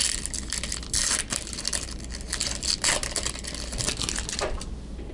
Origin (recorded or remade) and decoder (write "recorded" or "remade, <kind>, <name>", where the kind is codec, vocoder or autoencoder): recorded